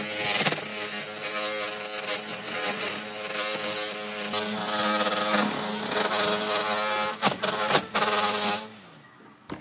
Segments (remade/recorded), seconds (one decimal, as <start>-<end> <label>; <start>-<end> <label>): 0.0-2.3 recorded; 2.3-2.9 remade; 2.9-9.6 recorded